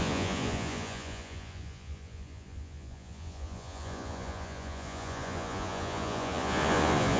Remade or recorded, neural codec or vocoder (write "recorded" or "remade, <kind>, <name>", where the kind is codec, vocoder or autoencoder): remade, vocoder, Vocos